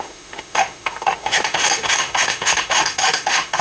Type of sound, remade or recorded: remade